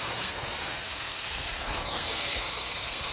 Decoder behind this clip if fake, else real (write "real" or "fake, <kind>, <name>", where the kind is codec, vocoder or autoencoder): fake, codec, SNAC